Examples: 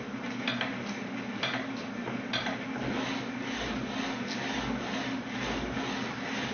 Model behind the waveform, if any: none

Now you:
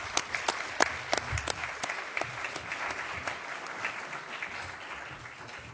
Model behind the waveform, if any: none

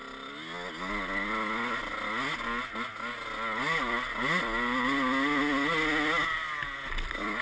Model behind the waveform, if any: none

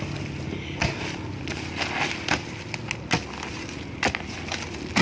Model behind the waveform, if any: none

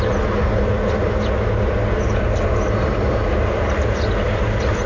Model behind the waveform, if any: none